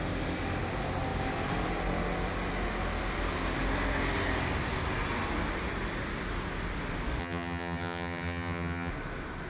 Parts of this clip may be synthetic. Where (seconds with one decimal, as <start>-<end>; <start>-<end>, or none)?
7.2-8.9